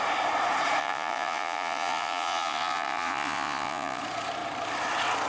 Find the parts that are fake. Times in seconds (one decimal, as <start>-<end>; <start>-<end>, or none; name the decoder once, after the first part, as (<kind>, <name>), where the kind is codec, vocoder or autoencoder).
0.8-4.0 (vocoder, Vocos)